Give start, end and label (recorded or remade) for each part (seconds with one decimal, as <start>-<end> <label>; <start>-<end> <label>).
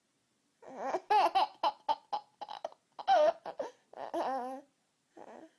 0.0-5.6 recorded